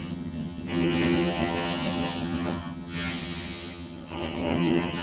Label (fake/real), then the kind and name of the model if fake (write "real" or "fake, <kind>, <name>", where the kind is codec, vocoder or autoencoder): fake, vocoder, HiFi-GAN